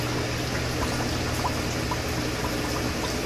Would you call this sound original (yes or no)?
yes